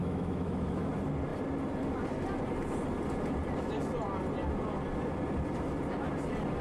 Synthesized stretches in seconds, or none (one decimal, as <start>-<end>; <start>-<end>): 0.0-0.9